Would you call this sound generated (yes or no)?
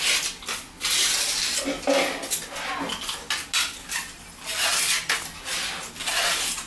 no